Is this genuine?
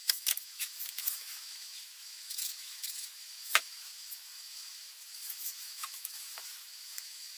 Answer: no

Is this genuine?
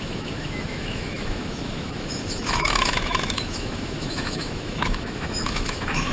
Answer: no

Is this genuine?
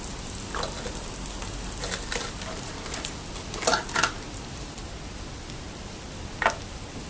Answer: yes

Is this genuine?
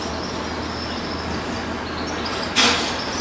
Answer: yes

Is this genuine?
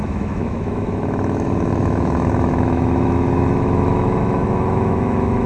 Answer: no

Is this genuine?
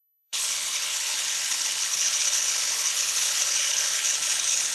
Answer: no